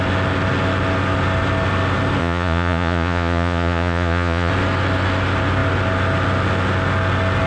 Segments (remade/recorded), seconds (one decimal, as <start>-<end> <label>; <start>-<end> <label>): 0.0-2.2 recorded; 2.2-4.5 remade; 4.5-7.5 recorded